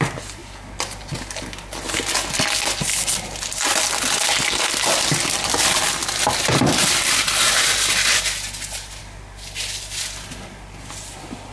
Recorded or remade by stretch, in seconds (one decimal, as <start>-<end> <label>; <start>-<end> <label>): 0.0-11.5 recorded